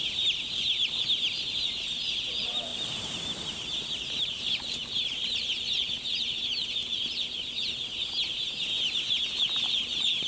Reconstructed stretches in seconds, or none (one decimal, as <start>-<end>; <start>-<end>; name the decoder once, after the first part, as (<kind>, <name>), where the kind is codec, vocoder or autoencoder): 2.7-6.4 (vocoder, BigVGAN v2)